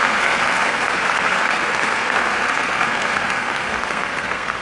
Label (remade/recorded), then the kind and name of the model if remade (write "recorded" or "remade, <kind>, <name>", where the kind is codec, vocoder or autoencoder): remade, codec, SNAC